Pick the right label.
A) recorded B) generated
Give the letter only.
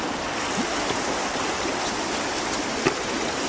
A